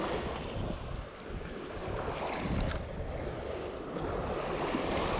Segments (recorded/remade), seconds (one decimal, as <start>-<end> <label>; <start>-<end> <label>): 0.0-5.2 recorded